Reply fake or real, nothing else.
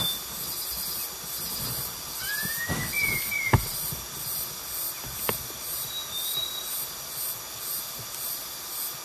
real